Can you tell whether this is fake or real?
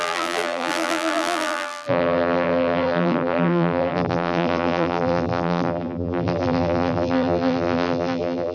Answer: fake